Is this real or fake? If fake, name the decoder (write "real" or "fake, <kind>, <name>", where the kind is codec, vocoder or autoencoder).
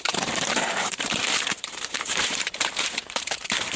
fake, vocoder, BigVGAN v2